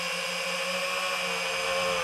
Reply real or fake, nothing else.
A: real